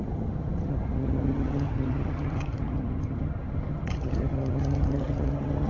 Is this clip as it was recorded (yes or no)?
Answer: no